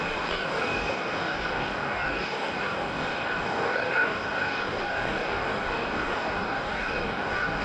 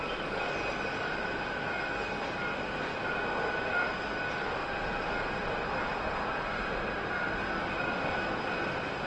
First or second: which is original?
second